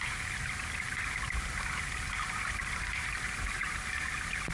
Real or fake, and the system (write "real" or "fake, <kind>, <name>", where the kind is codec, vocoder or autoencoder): real